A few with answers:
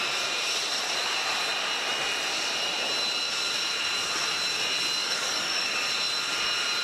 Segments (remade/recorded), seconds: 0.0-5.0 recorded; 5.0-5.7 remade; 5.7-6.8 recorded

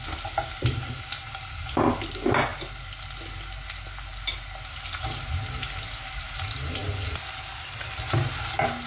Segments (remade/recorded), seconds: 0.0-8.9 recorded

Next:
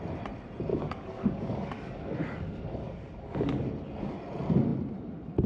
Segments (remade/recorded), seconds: 0.0-0.7 recorded; 0.7-3.7 remade; 3.7-5.5 recorded

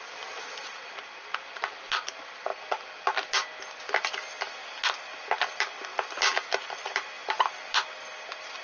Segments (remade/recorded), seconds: 0.0-8.6 recorded